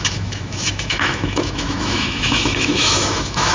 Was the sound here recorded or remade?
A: remade